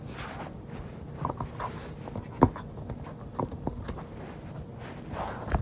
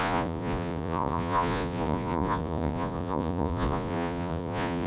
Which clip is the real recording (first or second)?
first